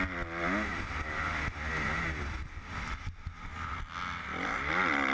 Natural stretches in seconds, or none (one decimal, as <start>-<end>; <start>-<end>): 0.0-5.1